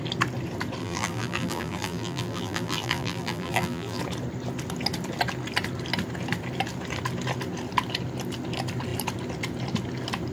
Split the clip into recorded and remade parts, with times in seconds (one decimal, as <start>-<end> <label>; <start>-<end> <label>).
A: 0.0-0.8 recorded; 0.8-4.0 remade; 4.0-10.3 recorded